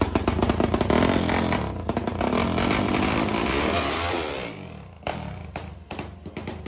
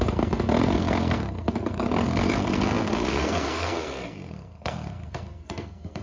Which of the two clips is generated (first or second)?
second